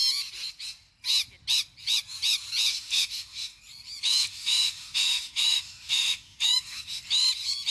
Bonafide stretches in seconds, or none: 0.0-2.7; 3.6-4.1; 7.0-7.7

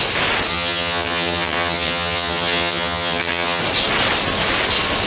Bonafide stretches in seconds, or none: 0.0-0.5; 3.6-5.1

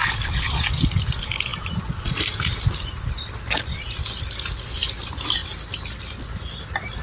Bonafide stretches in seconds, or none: 0.0-7.0

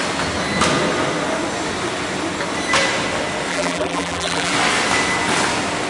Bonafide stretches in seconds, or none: 0.0-3.5; 4.5-5.9